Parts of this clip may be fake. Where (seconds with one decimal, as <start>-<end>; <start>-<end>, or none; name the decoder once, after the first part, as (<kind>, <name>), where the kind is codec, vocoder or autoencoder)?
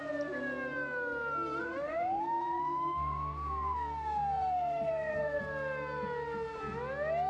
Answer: 1.6-5.4 (codec, SNAC)